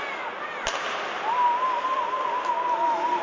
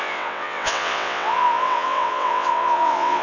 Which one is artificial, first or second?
second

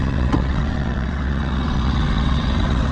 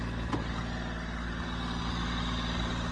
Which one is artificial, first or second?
first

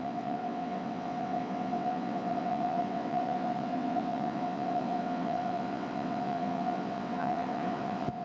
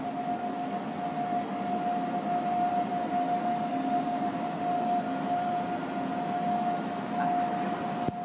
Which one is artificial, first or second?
first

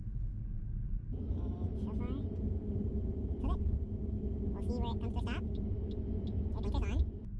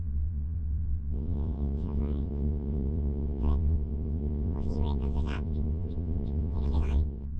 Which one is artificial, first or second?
second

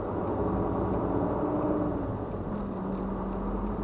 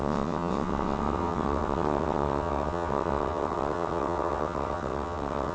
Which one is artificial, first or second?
second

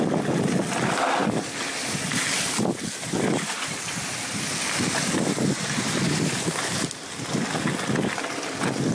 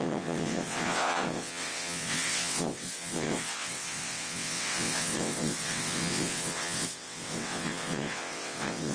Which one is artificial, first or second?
second